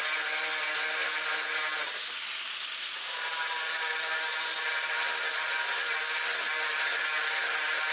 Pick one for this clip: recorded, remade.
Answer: recorded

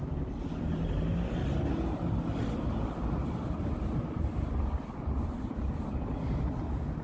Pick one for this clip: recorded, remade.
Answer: recorded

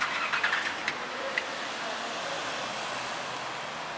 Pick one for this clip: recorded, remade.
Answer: recorded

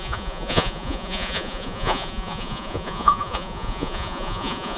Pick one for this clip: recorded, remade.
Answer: remade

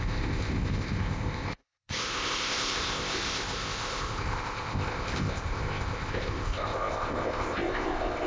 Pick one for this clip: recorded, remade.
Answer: remade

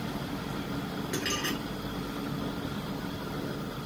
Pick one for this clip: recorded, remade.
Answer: recorded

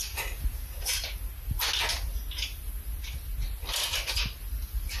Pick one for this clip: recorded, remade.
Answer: recorded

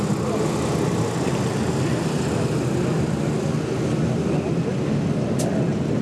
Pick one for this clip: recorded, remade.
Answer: recorded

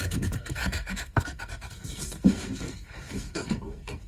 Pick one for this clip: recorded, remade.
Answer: remade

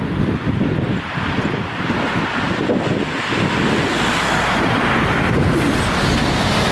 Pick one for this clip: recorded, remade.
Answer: recorded